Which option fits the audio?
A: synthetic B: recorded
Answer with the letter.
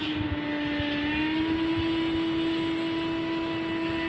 B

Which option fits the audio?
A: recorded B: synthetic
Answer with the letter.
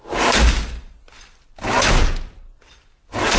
A